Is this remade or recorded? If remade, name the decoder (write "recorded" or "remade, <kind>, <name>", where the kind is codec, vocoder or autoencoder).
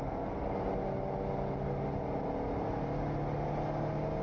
recorded